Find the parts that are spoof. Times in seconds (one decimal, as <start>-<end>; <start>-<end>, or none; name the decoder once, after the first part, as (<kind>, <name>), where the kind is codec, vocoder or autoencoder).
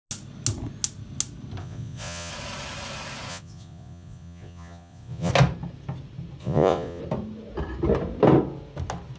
1.6-2.3 (vocoder, Vocos); 3.3-5.3; 6.4-7.0